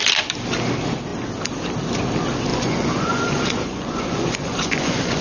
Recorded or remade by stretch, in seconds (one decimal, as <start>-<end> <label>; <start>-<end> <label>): 0.0-2.5 recorded; 2.5-5.2 remade